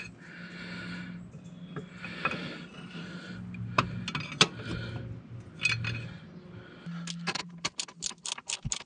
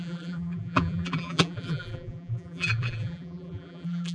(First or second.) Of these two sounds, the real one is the first